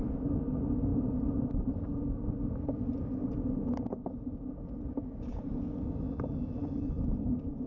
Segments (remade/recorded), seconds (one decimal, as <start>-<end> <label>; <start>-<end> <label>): 0.0-7.7 recorded